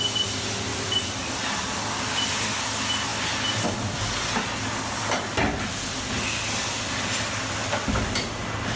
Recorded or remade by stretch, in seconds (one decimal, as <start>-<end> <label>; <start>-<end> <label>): 0.0-8.8 recorded